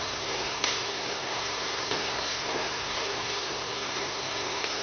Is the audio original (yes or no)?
no